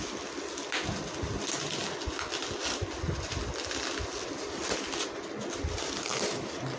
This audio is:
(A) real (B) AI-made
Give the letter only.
A